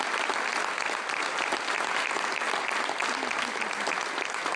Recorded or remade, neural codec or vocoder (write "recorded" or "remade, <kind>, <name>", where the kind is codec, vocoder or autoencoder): recorded